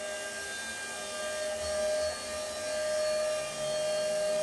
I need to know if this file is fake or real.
real